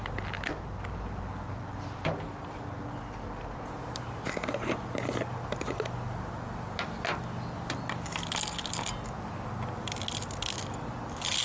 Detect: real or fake real